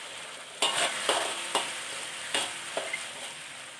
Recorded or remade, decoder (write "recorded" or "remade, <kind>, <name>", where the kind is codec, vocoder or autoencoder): recorded